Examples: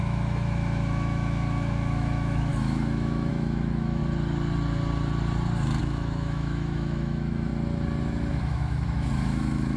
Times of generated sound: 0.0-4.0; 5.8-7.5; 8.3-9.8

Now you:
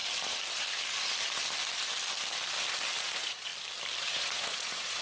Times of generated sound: 3.0-3.5; 4.0-5.0